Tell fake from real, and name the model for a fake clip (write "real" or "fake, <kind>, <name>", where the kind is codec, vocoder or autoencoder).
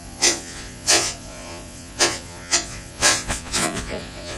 fake, vocoder, Vocos